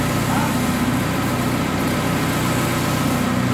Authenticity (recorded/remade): recorded